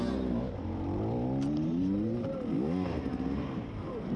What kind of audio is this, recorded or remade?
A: recorded